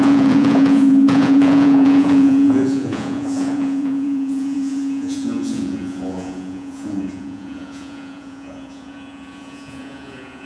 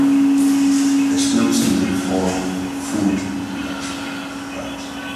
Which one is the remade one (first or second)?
first